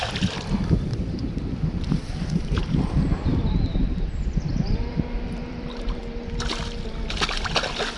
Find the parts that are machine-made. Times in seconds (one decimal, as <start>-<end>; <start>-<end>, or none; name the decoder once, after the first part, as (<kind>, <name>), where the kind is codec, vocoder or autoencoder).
1.2-6.0 (vocoder, BigVGAN v2)